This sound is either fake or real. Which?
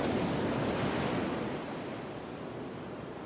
real